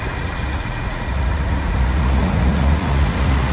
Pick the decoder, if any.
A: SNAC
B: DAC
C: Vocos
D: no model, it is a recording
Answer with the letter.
C